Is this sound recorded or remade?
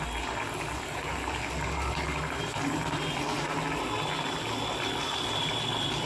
recorded